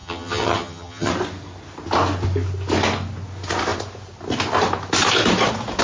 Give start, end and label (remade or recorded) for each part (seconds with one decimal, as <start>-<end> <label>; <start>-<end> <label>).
0.0-1.1 remade; 1.1-5.8 recorded